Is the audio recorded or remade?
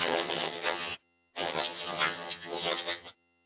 remade